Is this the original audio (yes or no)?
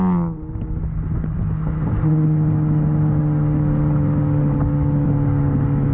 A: yes